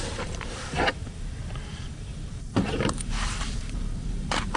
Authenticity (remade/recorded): remade